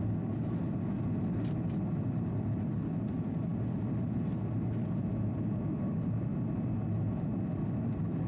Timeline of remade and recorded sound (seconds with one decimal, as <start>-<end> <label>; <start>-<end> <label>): 0.0-8.3 recorded